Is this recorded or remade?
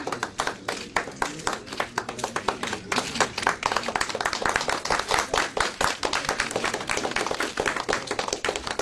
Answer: remade